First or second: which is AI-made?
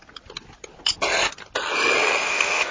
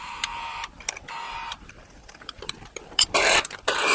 second